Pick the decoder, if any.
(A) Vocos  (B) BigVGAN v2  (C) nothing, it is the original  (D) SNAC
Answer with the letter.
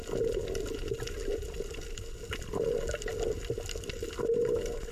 C